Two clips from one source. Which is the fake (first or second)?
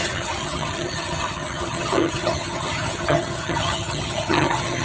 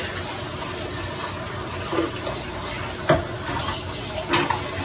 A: first